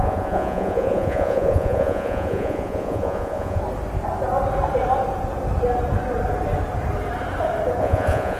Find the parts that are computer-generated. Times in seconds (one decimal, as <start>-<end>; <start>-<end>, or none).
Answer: 0.0-3.6; 7.8-8.4